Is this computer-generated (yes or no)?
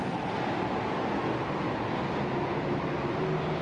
no